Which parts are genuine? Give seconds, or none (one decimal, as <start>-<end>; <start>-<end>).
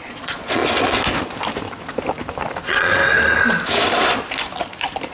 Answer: 0.6-2.6; 3.0-5.1